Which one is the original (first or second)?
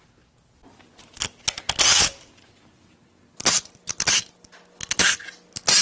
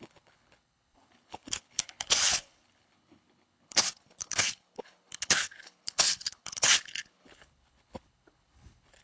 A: first